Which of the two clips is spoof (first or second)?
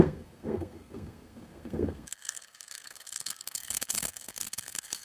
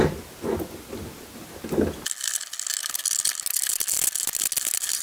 first